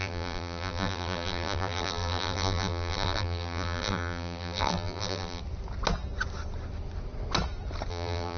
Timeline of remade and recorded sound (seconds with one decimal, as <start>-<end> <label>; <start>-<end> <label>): 0.0-5.4 remade; 5.4-7.9 recorded; 7.9-8.4 remade